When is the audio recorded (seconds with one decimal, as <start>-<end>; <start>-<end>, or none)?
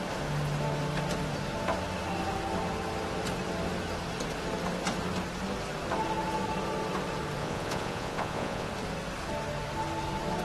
0.0-7.4; 8.7-10.4